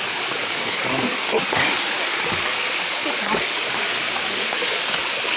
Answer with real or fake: fake